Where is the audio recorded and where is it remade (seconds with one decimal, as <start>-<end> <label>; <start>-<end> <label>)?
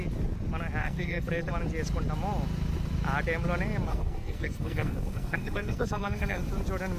0.0-0.8 recorded; 0.8-1.5 remade; 1.5-3.9 recorded; 3.9-6.4 remade; 6.4-7.0 recorded